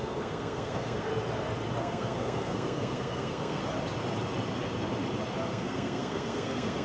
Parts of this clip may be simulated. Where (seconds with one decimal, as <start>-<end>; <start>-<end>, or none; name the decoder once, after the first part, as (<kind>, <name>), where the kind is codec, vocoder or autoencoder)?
0.0-1.1 (codec, SNAC); 1.8-3.6; 5.5-6.8